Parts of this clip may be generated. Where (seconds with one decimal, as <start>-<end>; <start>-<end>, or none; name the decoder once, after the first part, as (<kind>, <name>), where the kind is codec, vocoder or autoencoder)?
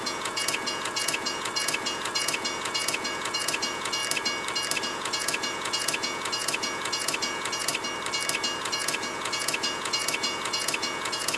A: 0.0-4.0 (vocoder, Vocos); 4.8-7.7; 8.6-11.4